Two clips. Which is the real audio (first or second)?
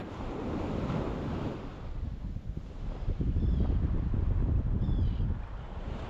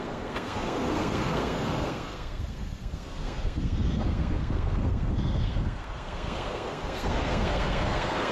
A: first